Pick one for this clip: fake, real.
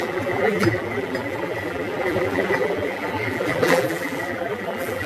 fake